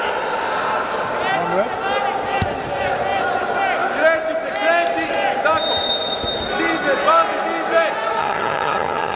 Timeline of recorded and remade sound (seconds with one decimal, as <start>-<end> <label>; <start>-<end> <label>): 0.0-8.2 recorded; 8.2-9.2 remade